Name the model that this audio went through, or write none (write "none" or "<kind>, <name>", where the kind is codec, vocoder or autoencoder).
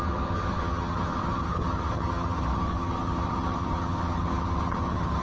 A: vocoder, HiFi-GAN